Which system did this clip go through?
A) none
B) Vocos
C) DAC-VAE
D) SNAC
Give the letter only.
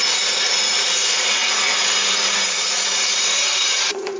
B